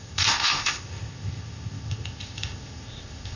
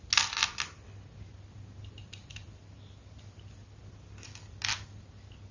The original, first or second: second